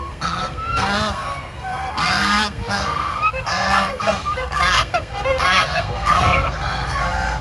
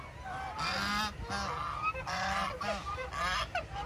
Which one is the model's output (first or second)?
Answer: first